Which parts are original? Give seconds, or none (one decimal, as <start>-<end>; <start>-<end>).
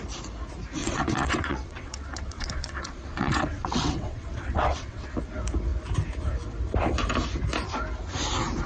0.0-0.8; 5.1-8.7